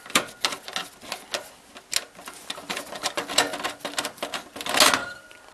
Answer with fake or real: real